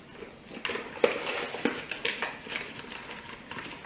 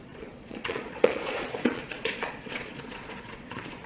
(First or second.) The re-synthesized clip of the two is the second